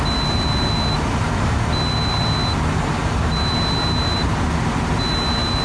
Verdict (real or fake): real